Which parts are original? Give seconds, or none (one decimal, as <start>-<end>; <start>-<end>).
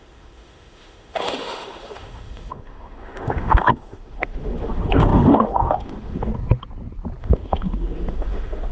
6.3-7.2